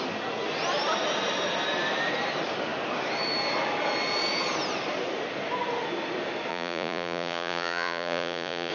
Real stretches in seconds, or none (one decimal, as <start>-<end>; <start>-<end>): 0.0-6.5